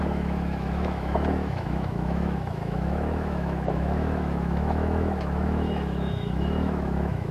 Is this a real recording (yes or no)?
no